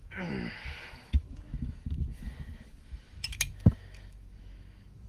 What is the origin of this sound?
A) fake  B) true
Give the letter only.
A